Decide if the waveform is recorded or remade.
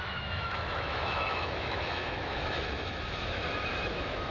remade